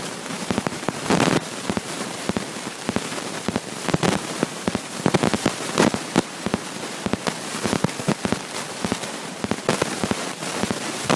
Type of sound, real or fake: fake